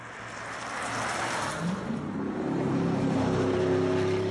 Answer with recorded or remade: recorded